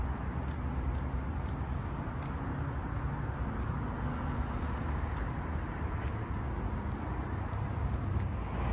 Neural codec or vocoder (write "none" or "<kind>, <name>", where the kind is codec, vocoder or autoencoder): none